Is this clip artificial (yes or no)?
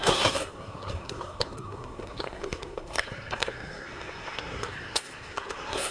yes